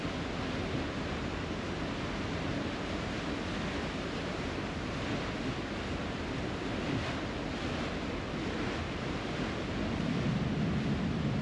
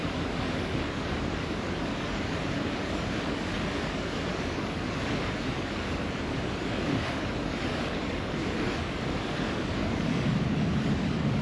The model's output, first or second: second